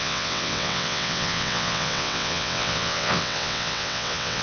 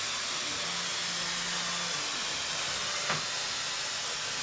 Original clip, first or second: second